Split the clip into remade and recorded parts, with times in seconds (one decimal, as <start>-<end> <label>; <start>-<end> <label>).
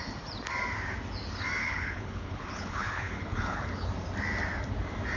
0.0-1.6 recorded; 1.6-3.9 remade; 3.9-5.2 recorded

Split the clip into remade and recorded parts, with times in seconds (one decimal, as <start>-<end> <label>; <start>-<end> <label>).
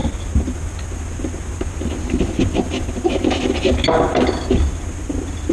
0.0-5.5 recorded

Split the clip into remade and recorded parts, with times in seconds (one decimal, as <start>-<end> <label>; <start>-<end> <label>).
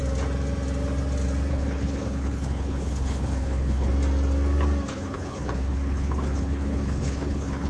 0.0-1.5 recorded; 1.5-3.9 remade; 3.9-4.9 recorded; 4.9-7.7 remade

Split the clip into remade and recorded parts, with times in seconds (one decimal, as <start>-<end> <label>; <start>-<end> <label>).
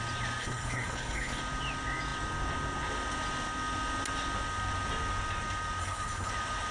0.0-0.4 recorded; 0.4-1.4 remade; 1.4-5.8 recorded; 5.8-6.3 remade; 6.3-6.7 recorded